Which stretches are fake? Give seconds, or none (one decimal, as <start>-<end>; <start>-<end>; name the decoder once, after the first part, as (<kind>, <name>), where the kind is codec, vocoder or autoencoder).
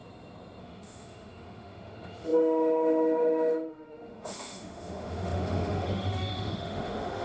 0.6-7.2 (autoencoder, DAC-VAE)